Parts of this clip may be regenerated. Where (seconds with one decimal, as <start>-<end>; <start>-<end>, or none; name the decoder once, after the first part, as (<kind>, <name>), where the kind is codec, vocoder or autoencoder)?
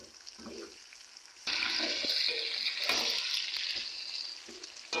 none